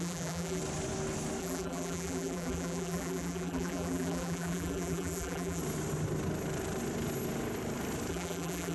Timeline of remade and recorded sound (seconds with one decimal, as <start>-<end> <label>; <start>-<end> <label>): 0.0-0.6 remade; 0.6-1.4 recorded; 1.4-5.6 remade; 5.6-8.1 recorded; 8.1-8.7 remade